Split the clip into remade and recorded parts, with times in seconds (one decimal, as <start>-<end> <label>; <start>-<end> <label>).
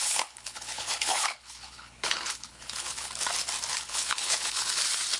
0.0-3.1 remade; 3.1-3.7 recorded; 3.7-4.8 remade; 4.8-5.2 recorded